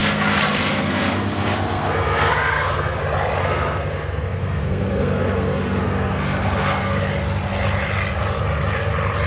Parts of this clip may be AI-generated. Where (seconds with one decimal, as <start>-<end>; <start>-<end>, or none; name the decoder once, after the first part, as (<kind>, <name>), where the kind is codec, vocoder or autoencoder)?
0.0-3.0 (codec, SNAC); 3.4-7.0